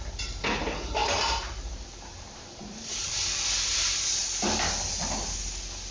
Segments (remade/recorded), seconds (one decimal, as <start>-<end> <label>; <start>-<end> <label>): 0.0-1.0 recorded; 1.0-3.1 remade; 3.1-5.9 recorded